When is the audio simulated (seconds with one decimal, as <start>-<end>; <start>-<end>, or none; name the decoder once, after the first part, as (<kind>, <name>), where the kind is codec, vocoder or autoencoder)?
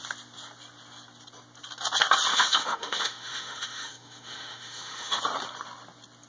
2.3-5.2 (autoencoder, DAC-VAE)